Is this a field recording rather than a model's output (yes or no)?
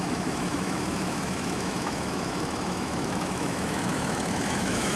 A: no